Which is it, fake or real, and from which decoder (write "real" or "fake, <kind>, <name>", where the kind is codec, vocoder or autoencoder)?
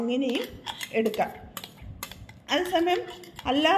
real